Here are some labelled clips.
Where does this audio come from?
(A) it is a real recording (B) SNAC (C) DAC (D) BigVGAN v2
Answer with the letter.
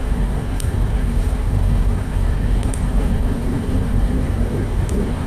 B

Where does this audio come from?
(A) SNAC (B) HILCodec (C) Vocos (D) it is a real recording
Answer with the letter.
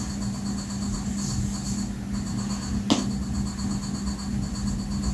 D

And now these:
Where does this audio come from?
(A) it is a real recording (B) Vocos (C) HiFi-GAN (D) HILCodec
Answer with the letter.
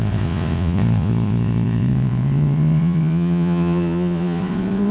B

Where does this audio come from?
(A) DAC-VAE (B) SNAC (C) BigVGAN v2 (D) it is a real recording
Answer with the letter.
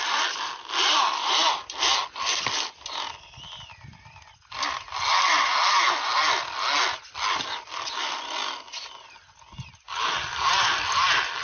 D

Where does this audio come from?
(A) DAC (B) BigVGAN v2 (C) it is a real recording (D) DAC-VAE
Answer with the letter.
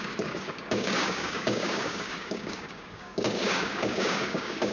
A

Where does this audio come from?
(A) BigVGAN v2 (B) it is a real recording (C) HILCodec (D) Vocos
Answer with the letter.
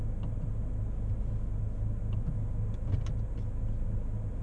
B